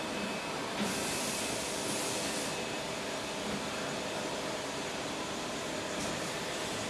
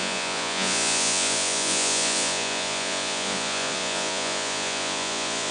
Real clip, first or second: first